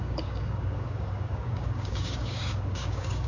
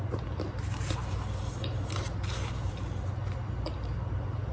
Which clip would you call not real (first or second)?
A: first